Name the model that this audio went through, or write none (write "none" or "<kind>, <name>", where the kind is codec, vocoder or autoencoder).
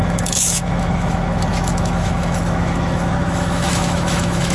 autoencoder, DAC-VAE